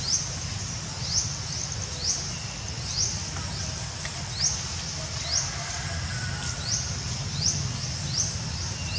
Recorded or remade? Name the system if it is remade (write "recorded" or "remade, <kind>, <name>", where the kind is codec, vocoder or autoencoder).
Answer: recorded